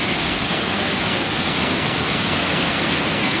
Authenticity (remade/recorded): remade